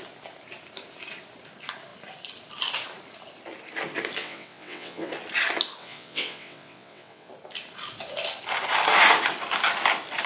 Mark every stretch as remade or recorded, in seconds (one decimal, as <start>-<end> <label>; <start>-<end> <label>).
0.0-4.2 recorded; 4.2-5.1 remade; 5.1-5.8 recorded; 5.8-7.3 remade; 7.3-10.3 recorded